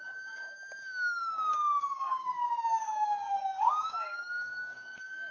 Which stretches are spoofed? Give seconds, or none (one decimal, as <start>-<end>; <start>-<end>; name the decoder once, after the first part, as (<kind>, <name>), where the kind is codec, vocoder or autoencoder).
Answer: 0.0-5.3 (codec, DAC)